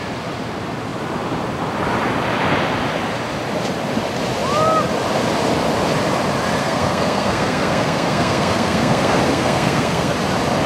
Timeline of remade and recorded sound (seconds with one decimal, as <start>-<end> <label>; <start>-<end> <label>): 0.0-6.6 recorded; 6.6-10.1 remade; 10.1-10.7 recorded